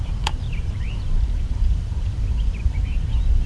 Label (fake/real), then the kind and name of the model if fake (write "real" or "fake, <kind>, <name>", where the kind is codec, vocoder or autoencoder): fake, vocoder, BigVGAN v2